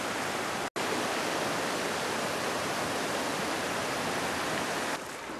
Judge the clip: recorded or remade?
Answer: recorded